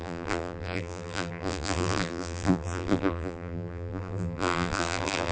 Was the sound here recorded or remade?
remade